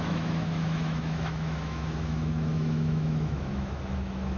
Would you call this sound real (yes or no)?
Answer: no